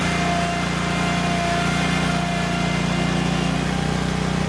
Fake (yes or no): no